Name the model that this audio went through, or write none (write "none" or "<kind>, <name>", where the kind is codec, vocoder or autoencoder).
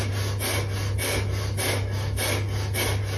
none